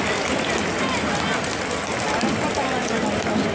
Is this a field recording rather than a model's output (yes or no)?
yes